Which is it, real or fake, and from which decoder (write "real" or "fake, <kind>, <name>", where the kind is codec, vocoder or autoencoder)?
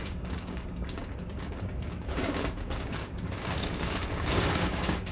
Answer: fake, codec, DAC